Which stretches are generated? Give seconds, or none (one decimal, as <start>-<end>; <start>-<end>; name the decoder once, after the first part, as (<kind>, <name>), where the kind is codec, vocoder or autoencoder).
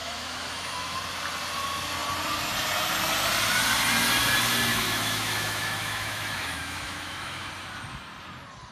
0.0-1.0 (autoencoder, DAC-VAE); 4.7-7.5